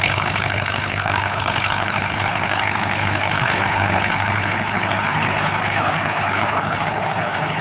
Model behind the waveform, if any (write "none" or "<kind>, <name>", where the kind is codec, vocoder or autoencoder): codec, HILCodec